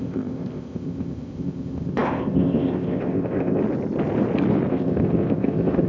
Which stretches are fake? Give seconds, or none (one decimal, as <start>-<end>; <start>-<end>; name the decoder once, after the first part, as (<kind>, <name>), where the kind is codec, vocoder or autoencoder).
0.0-3.6 (codec, ZipCodec); 4.7-5.9